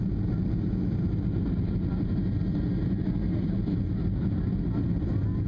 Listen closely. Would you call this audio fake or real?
real